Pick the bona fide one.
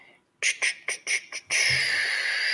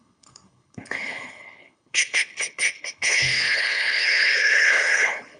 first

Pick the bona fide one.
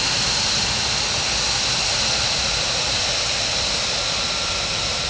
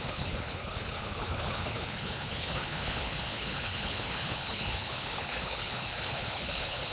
first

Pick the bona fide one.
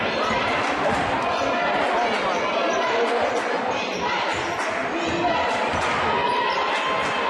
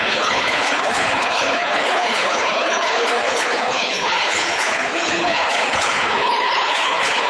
first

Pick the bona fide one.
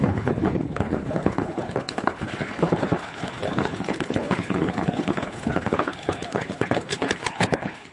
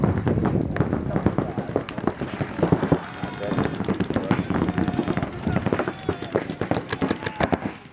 second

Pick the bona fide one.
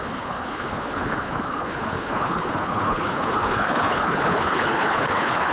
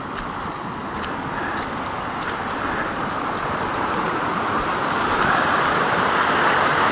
second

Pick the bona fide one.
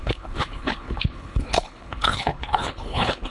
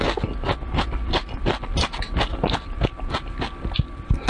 second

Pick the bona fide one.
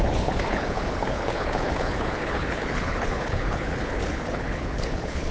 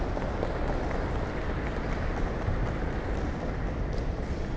second